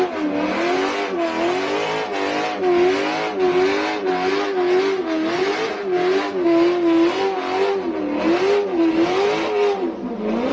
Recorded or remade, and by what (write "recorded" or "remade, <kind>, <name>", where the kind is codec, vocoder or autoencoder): recorded